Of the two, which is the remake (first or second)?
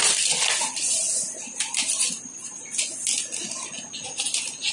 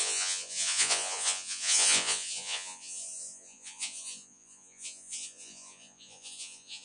second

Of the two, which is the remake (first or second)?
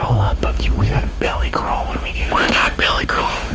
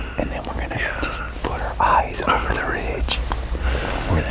first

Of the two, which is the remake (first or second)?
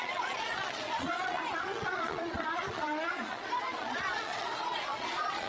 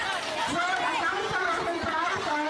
first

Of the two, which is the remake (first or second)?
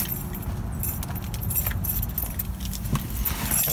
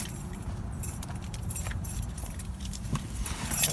second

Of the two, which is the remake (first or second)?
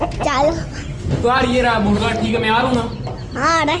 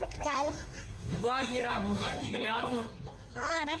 second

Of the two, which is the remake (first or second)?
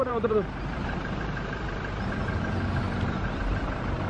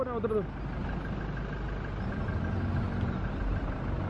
first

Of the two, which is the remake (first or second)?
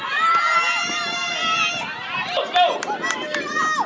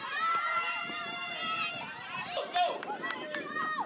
second